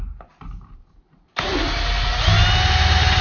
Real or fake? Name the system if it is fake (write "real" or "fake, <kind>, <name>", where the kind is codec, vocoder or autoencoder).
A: real